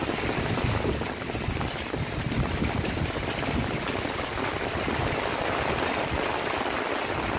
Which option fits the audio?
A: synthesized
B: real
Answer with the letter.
B